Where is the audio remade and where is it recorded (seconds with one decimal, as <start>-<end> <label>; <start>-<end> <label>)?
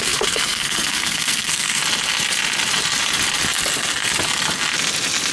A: 0.0-1.8 remade; 1.8-5.3 recorded